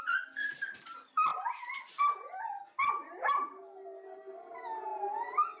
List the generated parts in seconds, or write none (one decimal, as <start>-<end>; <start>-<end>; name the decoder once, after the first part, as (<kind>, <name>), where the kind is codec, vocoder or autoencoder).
1.3-2.0 (vocoder, BigVGAN v2); 3.0-3.6